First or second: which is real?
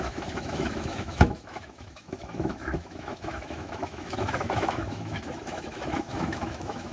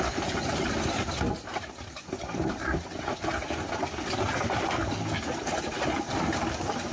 second